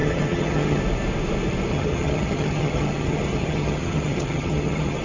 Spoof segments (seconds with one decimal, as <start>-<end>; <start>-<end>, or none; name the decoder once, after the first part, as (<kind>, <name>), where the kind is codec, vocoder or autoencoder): 0.0-0.8 (vocoder, HiFi-GAN); 1.7-5.0